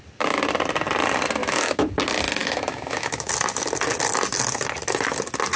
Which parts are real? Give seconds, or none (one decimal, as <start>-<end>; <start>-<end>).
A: 0.0-1.4; 1.9-2.4; 3.3-5.6